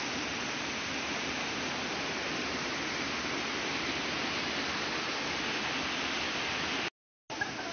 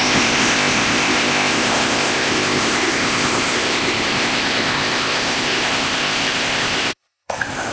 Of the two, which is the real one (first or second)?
first